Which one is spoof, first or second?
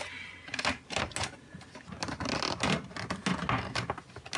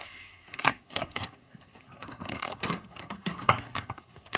second